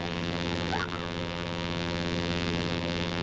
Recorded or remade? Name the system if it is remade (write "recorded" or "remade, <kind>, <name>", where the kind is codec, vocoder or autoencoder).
remade, vocoder, BigVGAN v2